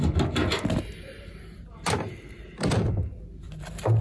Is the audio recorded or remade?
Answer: recorded